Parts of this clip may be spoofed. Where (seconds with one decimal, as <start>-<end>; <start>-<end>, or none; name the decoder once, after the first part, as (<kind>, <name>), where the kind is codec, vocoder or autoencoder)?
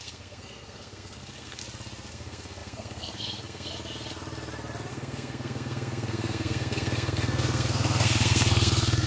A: 0.0-1.6 (codec, SNAC); 2.1-3.7; 4.9-9.1